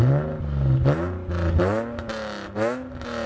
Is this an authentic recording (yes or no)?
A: yes